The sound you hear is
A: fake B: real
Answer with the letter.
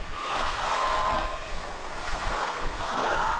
A